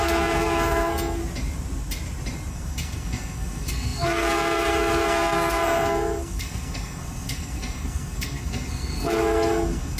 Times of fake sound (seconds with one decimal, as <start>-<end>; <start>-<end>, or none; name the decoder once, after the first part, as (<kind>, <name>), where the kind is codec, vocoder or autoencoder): 0.0-1.2 (codec, SNAC); 2.5-10.0